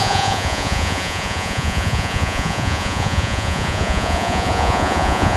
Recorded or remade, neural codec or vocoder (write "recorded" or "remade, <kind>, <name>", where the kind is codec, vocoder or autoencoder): remade, vocoder, Vocos